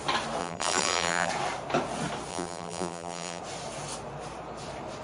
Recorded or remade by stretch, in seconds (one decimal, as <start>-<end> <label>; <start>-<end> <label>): 0.0-0.4 recorded; 0.4-1.3 remade; 1.3-2.3 recorded; 2.3-3.4 remade; 3.4-5.0 recorded